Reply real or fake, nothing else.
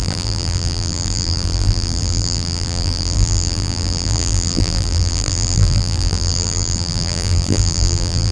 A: fake